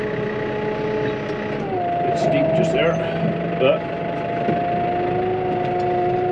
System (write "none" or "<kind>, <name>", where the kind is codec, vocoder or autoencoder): none